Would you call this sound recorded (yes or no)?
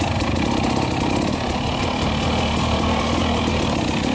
yes